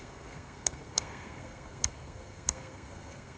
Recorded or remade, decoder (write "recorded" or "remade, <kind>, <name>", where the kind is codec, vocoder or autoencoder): remade, codec, SNAC